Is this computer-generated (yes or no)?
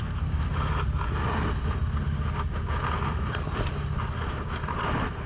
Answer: no